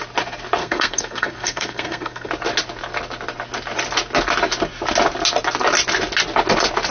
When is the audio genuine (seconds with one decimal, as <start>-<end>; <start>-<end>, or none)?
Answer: 0.0-0.6; 2.3-6.9